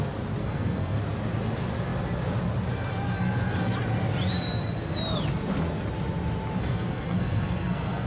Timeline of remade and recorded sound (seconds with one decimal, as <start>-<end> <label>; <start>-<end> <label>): 0.0-0.4 recorded; 0.4-1.0 remade; 1.0-6.6 recorded; 6.6-8.1 remade